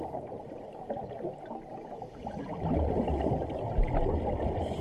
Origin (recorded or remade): recorded